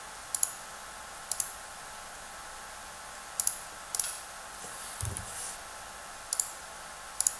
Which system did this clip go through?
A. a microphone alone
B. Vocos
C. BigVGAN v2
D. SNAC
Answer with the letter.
A